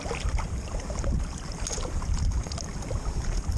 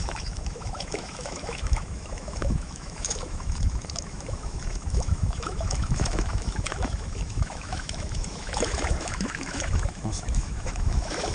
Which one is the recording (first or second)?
first